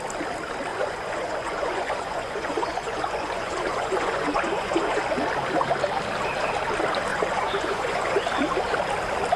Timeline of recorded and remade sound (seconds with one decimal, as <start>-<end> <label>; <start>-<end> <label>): 0.0-0.7 recorded; 0.7-5.0 remade; 5.0-7.1 recorded; 7.1-8.2 remade; 8.2-9.4 recorded

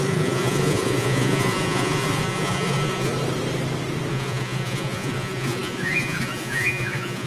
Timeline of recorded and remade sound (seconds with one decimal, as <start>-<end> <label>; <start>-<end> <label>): 0.0-3.1 remade; 3.1-4.1 recorded; 4.1-7.3 remade

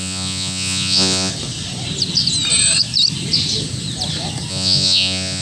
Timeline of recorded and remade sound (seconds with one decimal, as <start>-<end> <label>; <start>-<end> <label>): 0.0-1.3 remade; 1.3-4.5 recorded; 4.5-5.4 remade

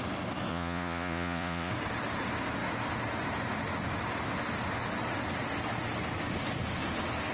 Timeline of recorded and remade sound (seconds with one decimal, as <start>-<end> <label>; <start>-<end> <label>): 0.0-0.5 recorded; 0.5-1.7 remade; 1.7-7.3 recorded

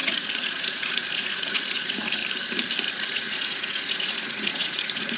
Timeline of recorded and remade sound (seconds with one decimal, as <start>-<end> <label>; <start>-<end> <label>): 0.0-2.2 remade; 2.2-2.9 recorded; 2.9-5.2 remade

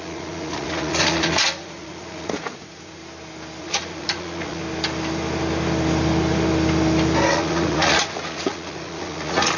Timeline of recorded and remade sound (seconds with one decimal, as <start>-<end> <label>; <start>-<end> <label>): 0.0-3.0 remade; 3.0-3.6 recorded; 3.6-4.6 remade; 4.6-7.3 recorded; 7.3-9.6 remade

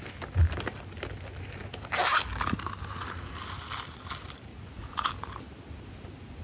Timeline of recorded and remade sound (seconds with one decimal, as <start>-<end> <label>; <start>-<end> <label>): 0.0-4.5 recorded; 4.5-5.1 remade; 5.1-6.4 recorded

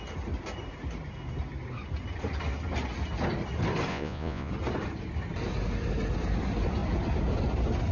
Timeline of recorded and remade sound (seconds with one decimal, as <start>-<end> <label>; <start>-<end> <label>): 0.0-3.9 recorded; 3.9-4.5 remade; 4.5-7.9 recorded